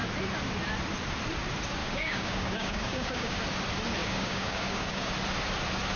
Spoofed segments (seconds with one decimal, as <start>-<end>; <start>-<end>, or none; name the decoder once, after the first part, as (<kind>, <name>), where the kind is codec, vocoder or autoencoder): 1.8-3.4 (codec, DAC); 4.0-5.1